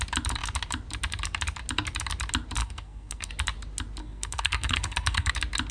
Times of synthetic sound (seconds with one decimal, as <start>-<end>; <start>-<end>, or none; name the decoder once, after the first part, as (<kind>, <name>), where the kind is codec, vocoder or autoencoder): 2.6-3.3 (codec, SNAC); 4.0-5.3